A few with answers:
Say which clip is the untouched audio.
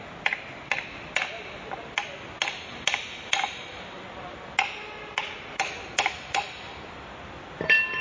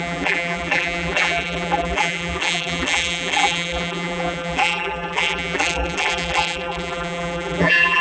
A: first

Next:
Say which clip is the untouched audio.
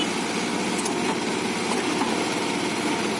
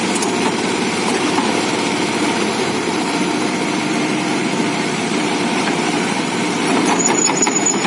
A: first